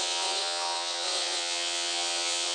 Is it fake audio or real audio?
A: fake